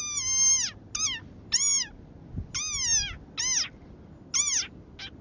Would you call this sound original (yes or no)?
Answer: yes